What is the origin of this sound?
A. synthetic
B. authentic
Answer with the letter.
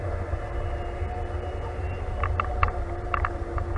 B